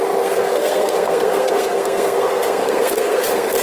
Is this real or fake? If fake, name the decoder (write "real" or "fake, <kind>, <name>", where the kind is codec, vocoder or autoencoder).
fake, codec, SNAC